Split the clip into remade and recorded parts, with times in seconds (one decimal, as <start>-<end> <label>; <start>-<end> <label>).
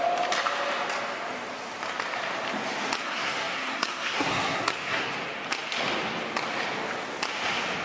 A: 0.0-3.0 recorded; 3.0-5.1 remade; 5.1-7.8 recorded